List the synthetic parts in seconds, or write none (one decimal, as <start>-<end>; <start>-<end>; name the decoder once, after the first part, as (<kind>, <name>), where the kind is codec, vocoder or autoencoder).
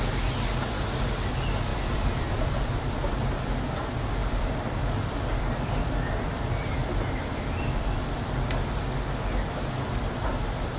1.7-2.8 (vocoder, BigVGAN v2); 4.2-8.8